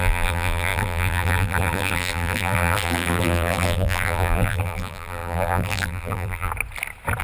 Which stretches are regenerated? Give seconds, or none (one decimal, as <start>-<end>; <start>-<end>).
0.0-6.5